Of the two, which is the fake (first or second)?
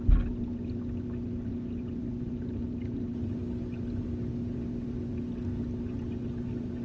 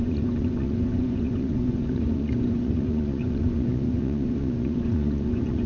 second